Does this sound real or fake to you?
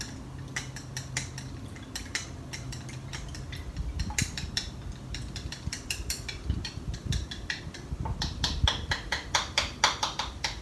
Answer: real